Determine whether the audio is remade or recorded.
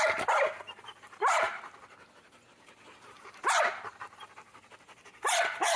recorded